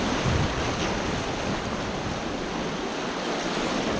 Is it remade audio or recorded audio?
recorded